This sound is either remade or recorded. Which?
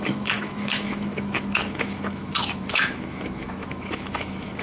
remade